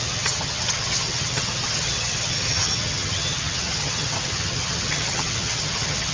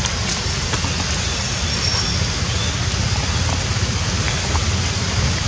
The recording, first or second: second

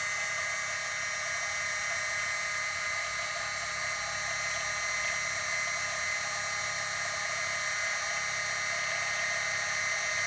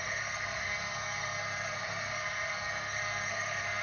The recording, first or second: first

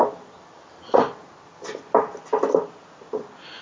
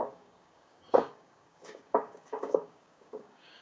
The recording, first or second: first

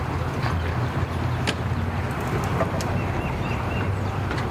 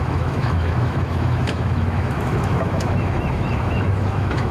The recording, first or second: first